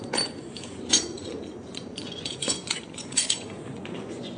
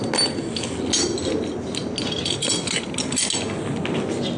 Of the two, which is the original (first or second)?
second